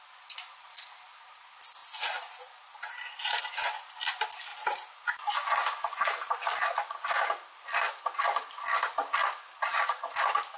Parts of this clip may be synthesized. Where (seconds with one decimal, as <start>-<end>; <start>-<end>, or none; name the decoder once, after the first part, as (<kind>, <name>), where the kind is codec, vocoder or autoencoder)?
none